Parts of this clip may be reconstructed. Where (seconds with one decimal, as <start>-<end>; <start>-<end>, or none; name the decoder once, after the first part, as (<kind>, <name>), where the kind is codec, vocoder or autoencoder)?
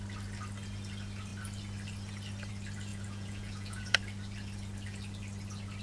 2.9-4.0 (vocoder, Vocos)